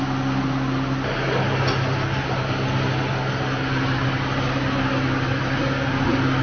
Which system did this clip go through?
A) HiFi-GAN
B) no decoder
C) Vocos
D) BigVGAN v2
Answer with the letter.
B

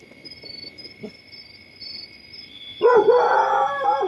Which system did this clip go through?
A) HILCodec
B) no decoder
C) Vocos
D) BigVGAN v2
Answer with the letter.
B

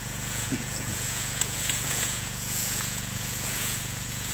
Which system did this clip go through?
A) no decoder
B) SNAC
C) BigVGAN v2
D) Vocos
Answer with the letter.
D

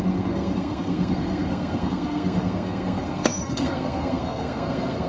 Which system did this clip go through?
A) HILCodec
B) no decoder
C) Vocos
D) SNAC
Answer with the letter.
D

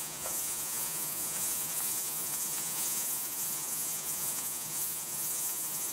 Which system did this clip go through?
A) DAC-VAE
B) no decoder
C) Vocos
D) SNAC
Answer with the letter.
C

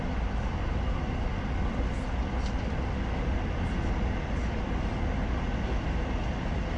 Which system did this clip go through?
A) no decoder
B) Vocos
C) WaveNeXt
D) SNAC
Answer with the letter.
A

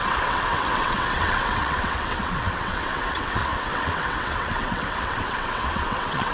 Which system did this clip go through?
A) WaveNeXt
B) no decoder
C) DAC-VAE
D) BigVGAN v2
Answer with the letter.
A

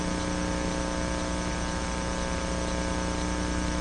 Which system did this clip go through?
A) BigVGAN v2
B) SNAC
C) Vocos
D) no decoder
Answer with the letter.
D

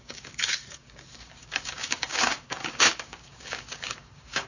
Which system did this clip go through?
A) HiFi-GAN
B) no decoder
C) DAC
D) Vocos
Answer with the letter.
C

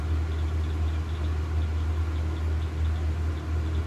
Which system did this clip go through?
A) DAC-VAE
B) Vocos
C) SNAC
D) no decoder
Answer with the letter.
D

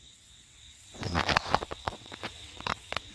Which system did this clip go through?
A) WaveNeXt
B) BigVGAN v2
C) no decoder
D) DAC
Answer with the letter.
A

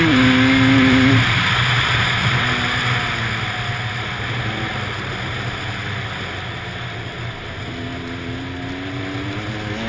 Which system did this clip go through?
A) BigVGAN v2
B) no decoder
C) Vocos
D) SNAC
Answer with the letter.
B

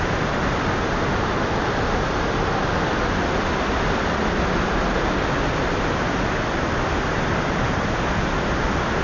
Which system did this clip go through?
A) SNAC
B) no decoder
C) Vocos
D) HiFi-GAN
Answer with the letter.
B